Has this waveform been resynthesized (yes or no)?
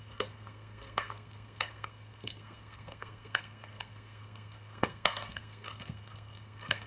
yes